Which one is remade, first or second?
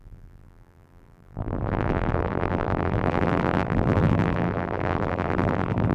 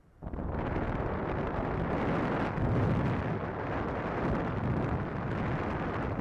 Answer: first